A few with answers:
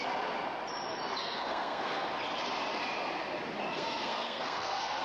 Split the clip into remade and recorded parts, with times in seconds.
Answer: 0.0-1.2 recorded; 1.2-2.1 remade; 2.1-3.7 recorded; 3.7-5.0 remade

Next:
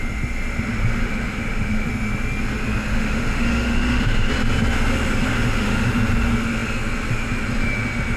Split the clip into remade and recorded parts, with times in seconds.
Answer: 0.0-0.8 recorded; 0.8-1.9 remade; 1.9-2.9 recorded; 2.9-4.3 remade; 4.3-5.3 recorded; 5.3-5.9 remade; 5.9-8.2 recorded

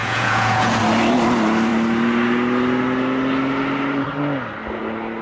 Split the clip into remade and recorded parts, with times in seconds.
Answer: 0.0-0.8 remade; 0.8-5.2 recorded

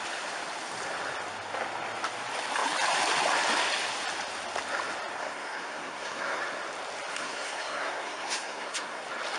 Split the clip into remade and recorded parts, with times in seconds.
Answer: 0.0-5.2 recorded; 5.2-6.4 remade; 6.4-7.1 recorded; 7.1-9.0 remade; 9.0-9.4 recorded

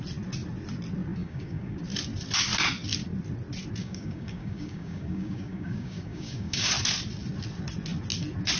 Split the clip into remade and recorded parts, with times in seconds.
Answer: 0.0-1.2 recorded; 1.2-1.8 remade; 1.8-3.8 recorded; 3.8-6.7 remade; 6.7-8.6 recorded